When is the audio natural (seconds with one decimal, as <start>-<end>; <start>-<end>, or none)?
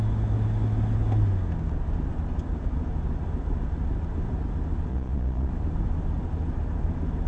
0.0-4.9; 5.5-7.3